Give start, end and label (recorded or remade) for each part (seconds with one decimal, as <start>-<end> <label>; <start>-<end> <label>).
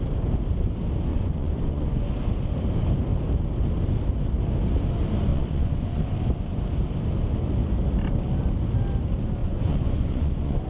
0.0-1.1 recorded; 1.1-2.1 remade; 2.1-5.3 recorded; 5.3-6.0 remade; 6.0-9.4 recorded; 9.4-10.7 remade